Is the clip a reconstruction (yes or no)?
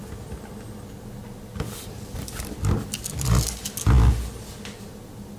no